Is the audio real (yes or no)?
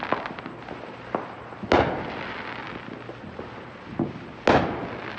yes